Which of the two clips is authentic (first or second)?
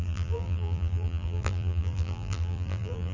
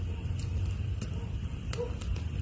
second